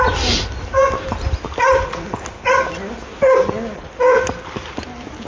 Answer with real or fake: real